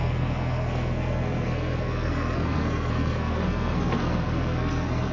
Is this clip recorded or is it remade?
remade